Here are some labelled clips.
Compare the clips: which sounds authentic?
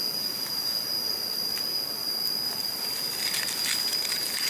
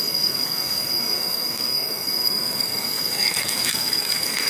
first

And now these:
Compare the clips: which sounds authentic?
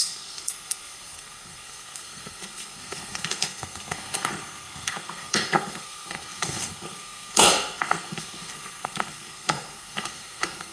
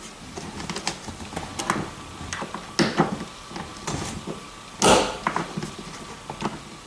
second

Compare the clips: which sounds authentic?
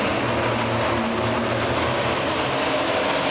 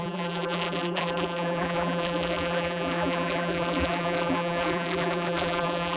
first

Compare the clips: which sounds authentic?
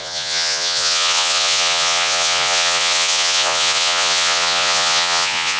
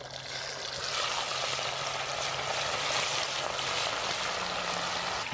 second